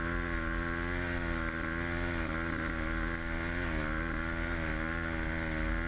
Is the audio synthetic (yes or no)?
no